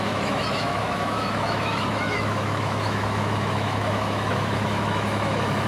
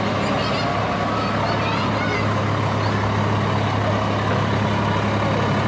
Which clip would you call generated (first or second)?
first